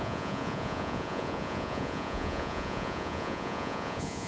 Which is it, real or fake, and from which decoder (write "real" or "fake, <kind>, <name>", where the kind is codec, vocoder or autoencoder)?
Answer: fake, vocoder, Vocos